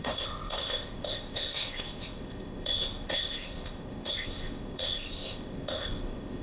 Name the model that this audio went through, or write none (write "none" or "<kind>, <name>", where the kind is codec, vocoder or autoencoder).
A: codec, ZipCodec